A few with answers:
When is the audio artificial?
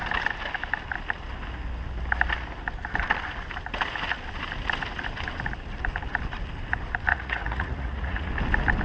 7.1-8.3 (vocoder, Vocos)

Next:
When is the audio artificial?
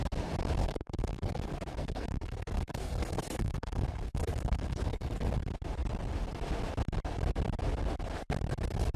0.6-5.3 (codec, SNAC)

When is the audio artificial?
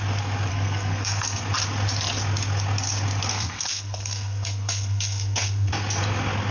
0.5-1.4 (codec, SNAC); 3.3-5.7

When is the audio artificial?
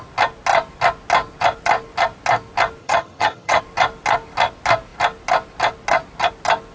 2.8-3.6 (vocoder, HiFi-GAN)